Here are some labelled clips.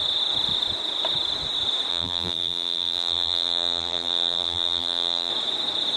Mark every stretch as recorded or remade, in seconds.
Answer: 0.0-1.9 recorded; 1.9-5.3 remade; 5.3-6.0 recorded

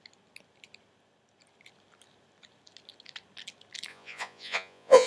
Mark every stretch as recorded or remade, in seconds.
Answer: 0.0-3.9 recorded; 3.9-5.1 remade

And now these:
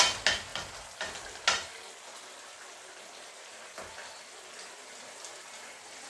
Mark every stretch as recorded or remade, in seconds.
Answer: 0.0-6.1 recorded